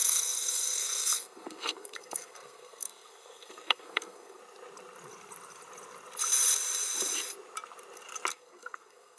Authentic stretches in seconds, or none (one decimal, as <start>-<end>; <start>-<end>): 4.4-8.3